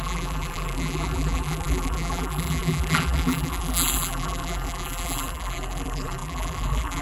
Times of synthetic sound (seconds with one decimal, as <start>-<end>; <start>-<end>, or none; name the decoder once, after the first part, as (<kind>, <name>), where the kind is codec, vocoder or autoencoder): 0.0-7.0 (vocoder, BigVGAN v2)